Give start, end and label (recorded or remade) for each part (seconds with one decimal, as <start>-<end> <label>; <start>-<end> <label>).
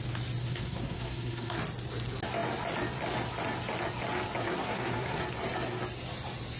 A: 0.0-0.4 recorded; 0.4-1.6 remade; 1.6-4.4 recorded; 4.4-5.2 remade; 5.2-6.6 recorded